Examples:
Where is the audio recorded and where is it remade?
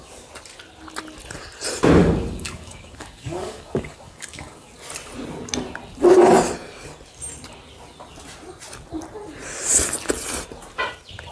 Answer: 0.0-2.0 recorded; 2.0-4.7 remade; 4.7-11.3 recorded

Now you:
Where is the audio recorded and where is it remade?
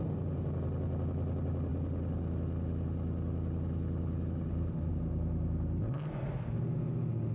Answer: 0.0-7.3 recorded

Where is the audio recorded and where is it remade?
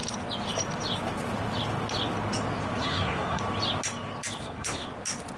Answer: 0.0-2.8 recorded; 2.8-3.4 remade; 3.4-4.4 recorded; 4.4-4.9 remade; 4.9-5.4 recorded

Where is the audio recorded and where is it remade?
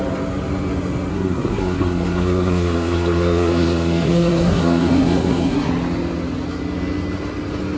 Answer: 0.0-1.1 recorded; 1.1-5.7 remade; 5.7-7.8 recorded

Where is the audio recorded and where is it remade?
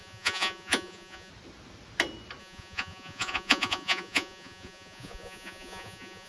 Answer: 0.0-1.3 remade; 1.3-2.4 recorded; 2.4-6.3 remade